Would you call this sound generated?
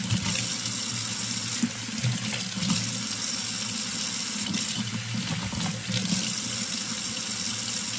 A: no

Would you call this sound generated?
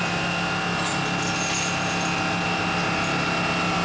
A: no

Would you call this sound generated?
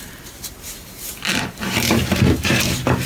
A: yes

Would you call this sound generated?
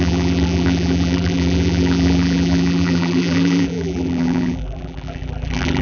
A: yes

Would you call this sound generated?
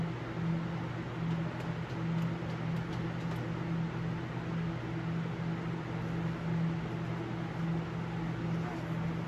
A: no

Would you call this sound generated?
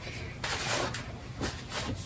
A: no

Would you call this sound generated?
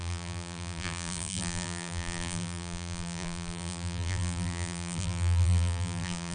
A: yes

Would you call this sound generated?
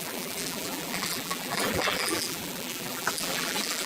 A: yes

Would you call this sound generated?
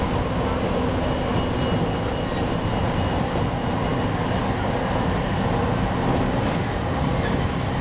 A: no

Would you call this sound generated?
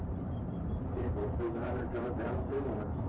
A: yes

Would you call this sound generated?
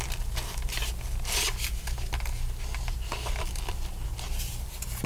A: no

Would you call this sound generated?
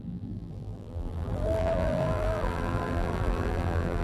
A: yes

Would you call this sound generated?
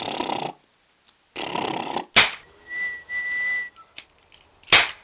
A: no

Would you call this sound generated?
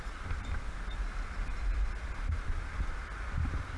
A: no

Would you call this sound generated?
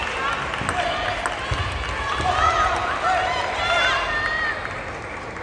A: no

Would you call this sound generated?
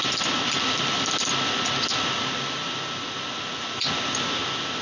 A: no